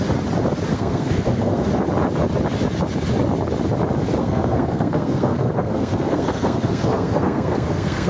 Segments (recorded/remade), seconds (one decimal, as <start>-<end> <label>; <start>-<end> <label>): 0.0-0.7 recorded; 0.7-1.7 remade; 1.7-4.2 recorded; 4.2-8.1 remade